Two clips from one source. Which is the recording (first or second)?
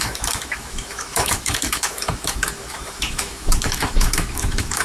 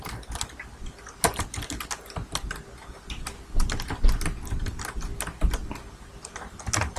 second